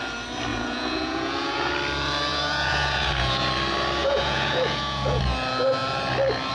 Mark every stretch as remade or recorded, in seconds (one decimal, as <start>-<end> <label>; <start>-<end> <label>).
0.0-0.5 recorded; 0.5-1.7 remade; 1.7-2.3 recorded; 2.3-3.5 remade; 3.5-4.0 recorded; 4.0-5.2 remade; 5.2-6.5 recorded

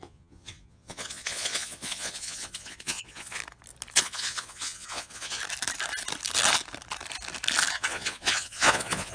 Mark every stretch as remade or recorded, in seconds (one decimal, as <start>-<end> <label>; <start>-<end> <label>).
0.0-3.4 remade; 3.4-4.0 recorded; 4.0-5.4 remade; 5.4-7.7 recorded; 7.7-9.1 remade

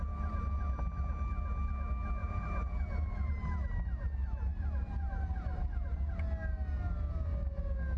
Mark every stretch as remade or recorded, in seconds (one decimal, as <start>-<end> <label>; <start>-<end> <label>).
0.0-2.2 recorded; 2.2-3.3 remade; 3.3-8.0 recorded

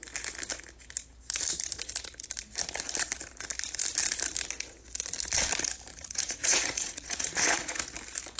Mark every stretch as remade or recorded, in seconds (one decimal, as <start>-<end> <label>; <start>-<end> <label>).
0.0-5.9 recorded; 5.9-7.7 remade; 7.7-8.4 recorded

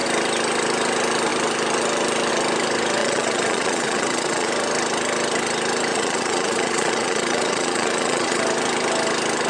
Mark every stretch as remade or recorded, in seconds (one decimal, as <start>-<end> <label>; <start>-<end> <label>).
0.0-3.0 recorded; 3.0-4.5 remade; 4.5-5.9 recorded; 5.9-8.4 remade; 8.4-9.5 recorded

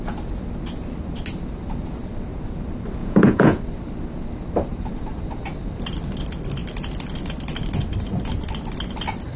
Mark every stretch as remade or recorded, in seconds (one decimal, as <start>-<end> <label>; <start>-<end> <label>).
0.0-3.0 recorded; 3.0-3.6 remade; 3.6-9.4 recorded

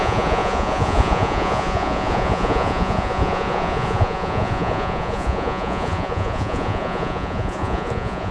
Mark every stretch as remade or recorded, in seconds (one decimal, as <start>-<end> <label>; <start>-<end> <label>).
0.0-8.3 remade

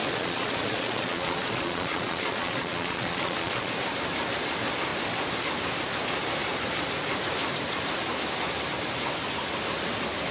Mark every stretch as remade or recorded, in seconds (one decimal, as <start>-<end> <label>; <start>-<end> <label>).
0.0-3.7 remade; 3.7-10.3 recorded